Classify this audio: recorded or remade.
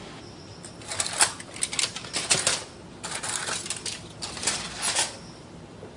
recorded